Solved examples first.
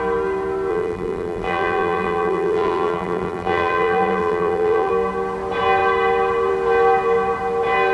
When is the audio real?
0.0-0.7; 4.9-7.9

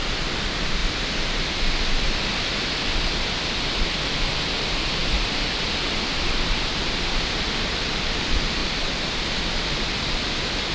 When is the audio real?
0.0-5.0; 6.6-8.6; 9.3-10.7

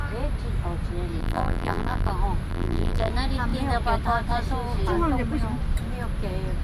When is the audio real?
0.0-1.2; 2.1-2.5; 3.1-6.6

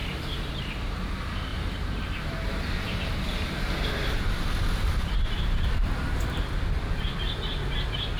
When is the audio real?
0.9-1.5; 6.4-8.2

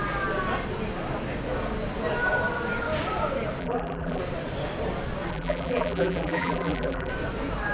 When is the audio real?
0.0-3.6; 4.2-5.3; 7.1-7.7